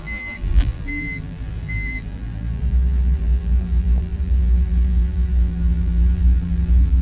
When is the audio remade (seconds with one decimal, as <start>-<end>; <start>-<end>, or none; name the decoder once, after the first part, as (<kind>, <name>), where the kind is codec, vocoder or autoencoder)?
0.0-7.0 (vocoder, BigVGAN v2)